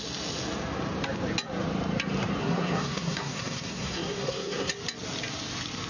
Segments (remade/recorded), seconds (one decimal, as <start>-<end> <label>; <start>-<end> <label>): 0.0-2.4 recorded; 2.4-4.7 remade; 4.7-5.9 recorded